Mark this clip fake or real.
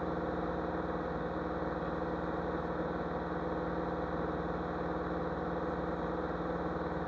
real